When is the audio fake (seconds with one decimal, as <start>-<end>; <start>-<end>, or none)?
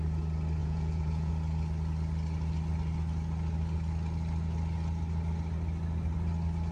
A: 0.6-1.3